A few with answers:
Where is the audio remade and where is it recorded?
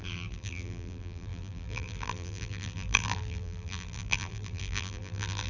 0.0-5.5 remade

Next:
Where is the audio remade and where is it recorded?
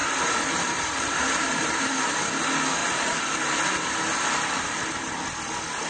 0.0-1.9 remade; 1.9-2.8 recorded; 2.8-3.4 remade; 3.4-5.9 recorded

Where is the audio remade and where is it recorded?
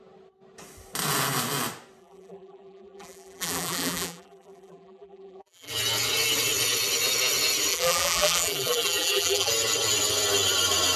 0.0-2.0 recorded; 2.0-5.7 remade; 5.7-7.7 recorded; 7.7-9.5 remade; 9.5-11.0 recorded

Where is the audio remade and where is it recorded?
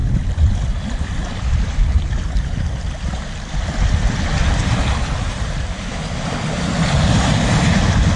0.0-2.7 remade; 2.7-8.2 recorded